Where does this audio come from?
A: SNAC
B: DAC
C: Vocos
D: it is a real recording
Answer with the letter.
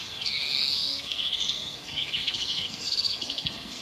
A